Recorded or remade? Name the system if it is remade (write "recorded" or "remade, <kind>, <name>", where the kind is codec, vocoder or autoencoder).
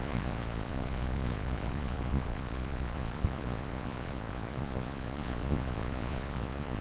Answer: remade, vocoder, Vocos